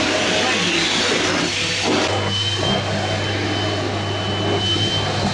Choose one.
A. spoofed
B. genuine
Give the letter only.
B